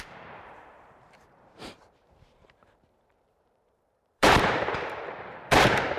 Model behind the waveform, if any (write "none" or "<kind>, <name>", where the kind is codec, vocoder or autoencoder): vocoder, BigVGAN v2